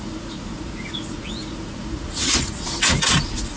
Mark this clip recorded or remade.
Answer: remade